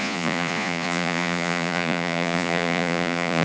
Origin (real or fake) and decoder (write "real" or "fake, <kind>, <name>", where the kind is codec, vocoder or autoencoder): fake, vocoder, Vocos